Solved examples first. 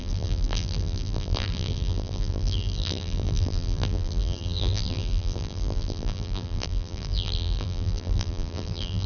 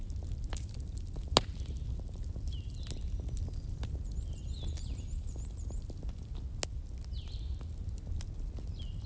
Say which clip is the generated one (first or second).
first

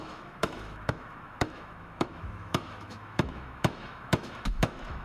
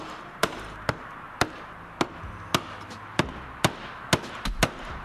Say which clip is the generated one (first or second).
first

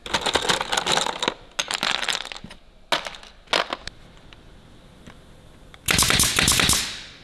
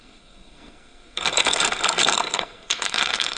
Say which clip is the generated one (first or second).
second